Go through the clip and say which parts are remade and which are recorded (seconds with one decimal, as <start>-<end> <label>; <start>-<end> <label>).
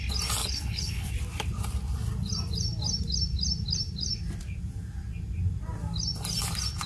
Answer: 0.0-0.4 recorded; 0.4-1.1 remade; 1.1-6.9 recorded